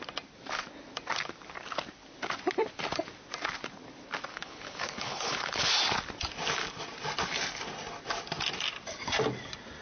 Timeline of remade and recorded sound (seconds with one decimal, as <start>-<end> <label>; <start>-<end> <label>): 0.0-4.3 recorded; 4.3-5.7 remade; 5.7-9.8 recorded